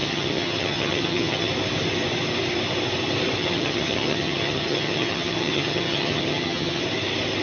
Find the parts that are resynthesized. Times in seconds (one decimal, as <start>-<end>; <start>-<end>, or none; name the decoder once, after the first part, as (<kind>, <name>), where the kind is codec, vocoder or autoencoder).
0.0-1.5 (vocoder, HiFi-GAN); 3.4-6.8